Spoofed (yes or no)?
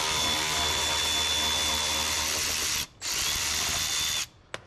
no